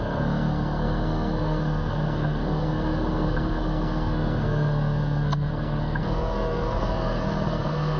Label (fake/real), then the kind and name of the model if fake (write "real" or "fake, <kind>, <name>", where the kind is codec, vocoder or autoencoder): fake, codec, SNAC